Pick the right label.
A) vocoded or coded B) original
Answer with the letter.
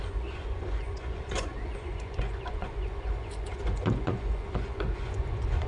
A